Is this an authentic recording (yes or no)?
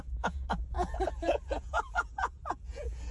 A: no